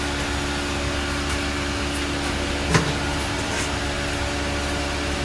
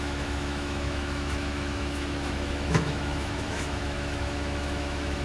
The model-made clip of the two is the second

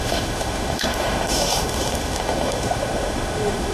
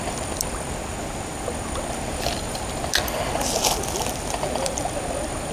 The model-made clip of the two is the first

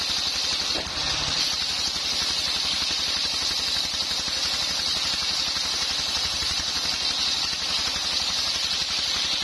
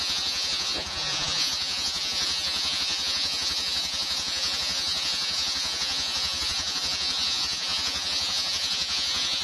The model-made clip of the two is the second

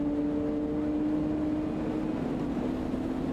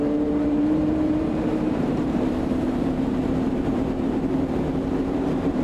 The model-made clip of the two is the second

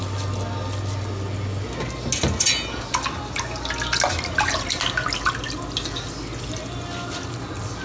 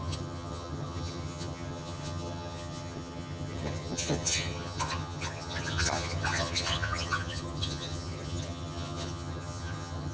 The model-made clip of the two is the second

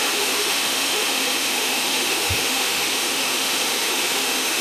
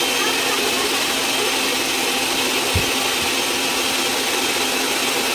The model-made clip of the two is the first